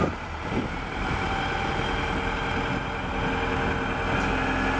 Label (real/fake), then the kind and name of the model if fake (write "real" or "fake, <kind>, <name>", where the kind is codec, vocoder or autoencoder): real